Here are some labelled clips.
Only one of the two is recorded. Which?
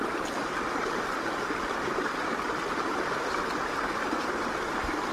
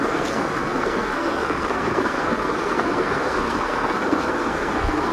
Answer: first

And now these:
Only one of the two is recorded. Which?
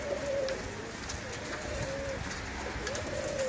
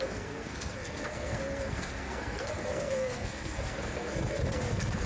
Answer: first